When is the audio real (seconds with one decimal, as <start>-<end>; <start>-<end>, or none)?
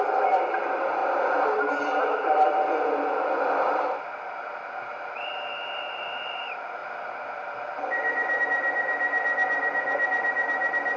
0.0-11.0